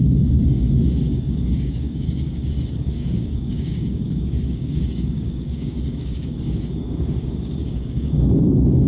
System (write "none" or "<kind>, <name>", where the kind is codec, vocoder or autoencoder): codec, DAC